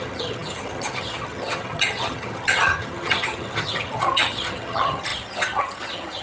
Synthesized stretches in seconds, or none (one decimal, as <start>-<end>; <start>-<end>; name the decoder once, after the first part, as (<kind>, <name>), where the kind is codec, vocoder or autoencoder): 0.0-6.2 (vocoder, HiFi-GAN)